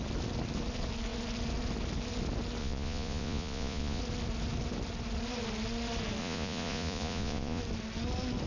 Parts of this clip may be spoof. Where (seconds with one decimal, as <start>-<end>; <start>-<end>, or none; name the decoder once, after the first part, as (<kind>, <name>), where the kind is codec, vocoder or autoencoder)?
2.6-4.0 (vocoder, Vocos); 6.2-7.6